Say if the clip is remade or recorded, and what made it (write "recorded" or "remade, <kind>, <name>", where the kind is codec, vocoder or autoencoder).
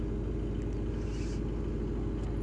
recorded